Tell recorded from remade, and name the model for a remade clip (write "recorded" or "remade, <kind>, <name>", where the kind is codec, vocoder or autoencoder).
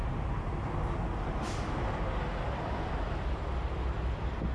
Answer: recorded